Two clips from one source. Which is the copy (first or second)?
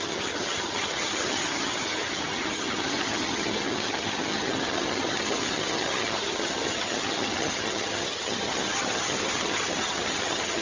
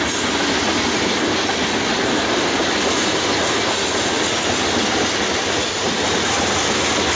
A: first